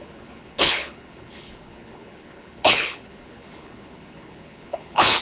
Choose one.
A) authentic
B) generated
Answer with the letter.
B